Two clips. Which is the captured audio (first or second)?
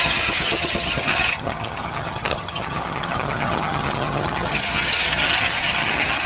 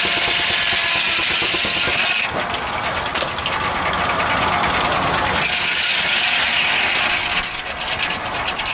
second